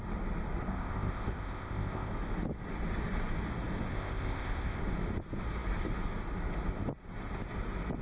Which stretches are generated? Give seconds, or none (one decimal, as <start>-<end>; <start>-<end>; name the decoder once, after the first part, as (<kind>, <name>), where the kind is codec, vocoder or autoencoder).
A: 0.7-2.1 (codec, ZipCodec); 3.9-4.8

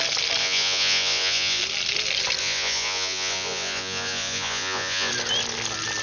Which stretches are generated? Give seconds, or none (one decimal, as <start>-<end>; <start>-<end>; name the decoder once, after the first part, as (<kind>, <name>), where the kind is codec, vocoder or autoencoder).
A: 0.4-1.6 (vocoder, Vocos); 2.4-5.1

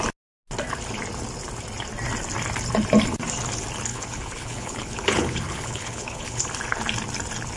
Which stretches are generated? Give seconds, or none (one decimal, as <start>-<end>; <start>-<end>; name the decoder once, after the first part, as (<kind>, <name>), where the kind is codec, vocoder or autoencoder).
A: 3.9-6.4 (codec, HILCodec)

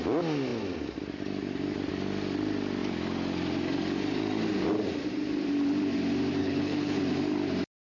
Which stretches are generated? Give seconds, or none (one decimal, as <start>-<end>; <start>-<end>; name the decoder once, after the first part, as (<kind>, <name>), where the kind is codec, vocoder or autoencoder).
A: 6.4-7.0 (codec, HILCodec)

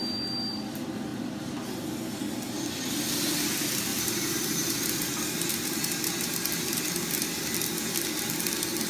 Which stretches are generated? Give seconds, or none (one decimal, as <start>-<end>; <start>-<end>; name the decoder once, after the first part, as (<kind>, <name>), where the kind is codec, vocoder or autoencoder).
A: 1.1-2.2 (vocoder, BigVGAN v2); 3.9-5.1

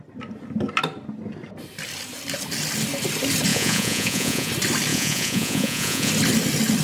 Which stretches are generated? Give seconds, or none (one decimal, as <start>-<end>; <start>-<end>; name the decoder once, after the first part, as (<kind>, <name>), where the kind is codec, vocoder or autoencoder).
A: 3.5-4.5 (vocoder, Vocos); 4.9-6.1

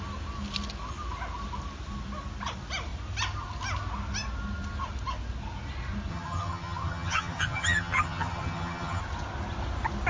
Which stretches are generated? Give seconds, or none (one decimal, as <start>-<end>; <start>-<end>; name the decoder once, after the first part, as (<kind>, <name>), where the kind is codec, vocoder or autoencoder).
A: 6.1-9.0 (vocoder, HiFi-GAN)